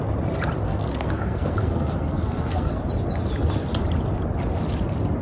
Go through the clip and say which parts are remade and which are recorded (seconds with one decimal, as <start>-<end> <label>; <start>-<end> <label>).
0.0-0.7 recorded; 0.7-2.8 remade; 2.8-5.2 recorded